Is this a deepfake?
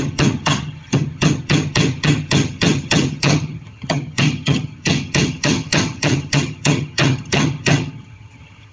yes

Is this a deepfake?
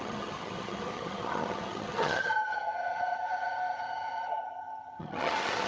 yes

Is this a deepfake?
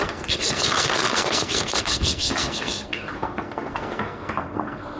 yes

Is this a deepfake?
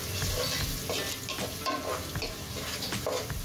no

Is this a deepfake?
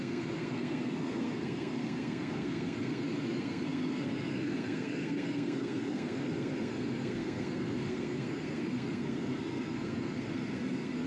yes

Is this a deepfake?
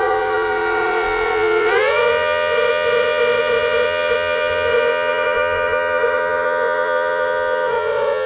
yes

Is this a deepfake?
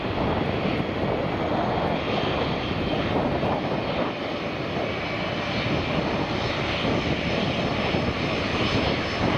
no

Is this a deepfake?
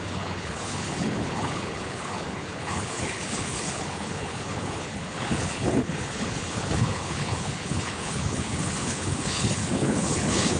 yes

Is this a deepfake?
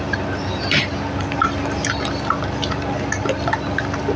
no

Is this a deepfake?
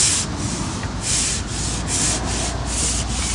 no